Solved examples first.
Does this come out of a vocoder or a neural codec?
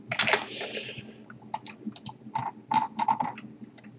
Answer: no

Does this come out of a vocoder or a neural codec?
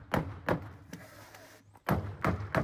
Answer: no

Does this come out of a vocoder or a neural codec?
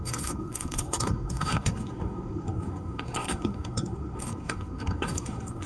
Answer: yes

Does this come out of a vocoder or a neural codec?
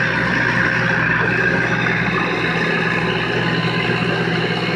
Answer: no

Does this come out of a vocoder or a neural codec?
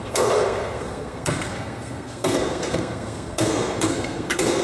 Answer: yes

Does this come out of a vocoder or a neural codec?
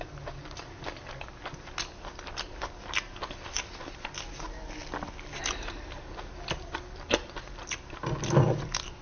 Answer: no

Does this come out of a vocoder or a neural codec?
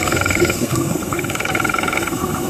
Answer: yes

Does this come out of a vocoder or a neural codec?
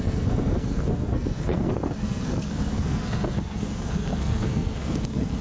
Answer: yes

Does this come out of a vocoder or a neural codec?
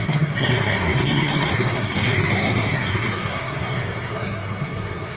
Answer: yes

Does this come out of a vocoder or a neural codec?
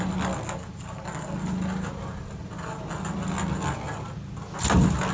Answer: no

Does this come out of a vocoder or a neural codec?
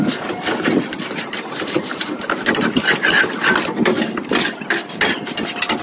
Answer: no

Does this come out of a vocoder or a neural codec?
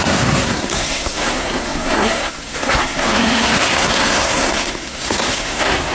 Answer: yes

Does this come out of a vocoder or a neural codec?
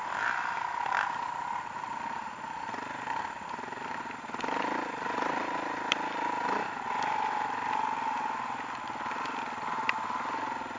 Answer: no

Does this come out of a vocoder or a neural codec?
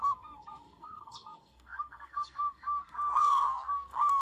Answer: yes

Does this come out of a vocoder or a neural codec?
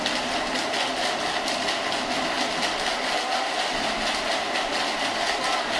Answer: no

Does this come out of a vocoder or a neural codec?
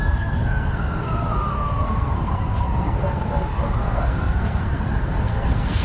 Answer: yes